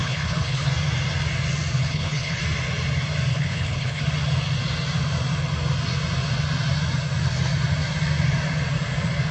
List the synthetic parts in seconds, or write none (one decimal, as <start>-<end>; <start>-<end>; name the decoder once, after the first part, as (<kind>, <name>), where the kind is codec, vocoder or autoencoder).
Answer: 0.0-0.7 (codec, HILCodec); 1.8-2.4; 3.3-4.0